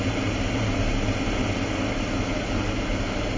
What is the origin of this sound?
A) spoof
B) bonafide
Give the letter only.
B